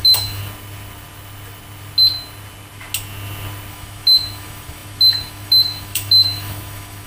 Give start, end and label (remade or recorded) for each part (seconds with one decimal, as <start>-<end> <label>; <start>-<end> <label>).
0.0-0.4 remade; 0.4-3.7 recorded; 3.7-7.1 remade